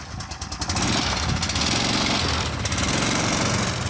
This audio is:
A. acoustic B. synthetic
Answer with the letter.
A